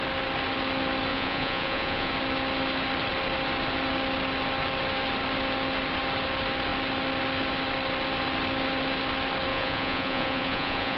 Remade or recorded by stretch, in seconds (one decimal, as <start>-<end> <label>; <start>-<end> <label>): 0.0-1.1 recorded; 1.1-2.1 remade; 2.1-9.5 recorded; 9.5-11.0 remade